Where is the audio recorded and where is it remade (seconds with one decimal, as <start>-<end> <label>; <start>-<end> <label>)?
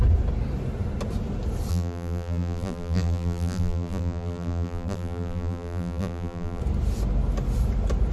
0.0-1.7 recorded; 1.7-6.6 remade; 6.6-8.1 recorded